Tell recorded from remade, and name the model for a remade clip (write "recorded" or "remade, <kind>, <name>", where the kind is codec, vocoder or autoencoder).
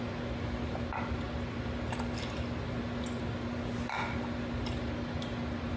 recorded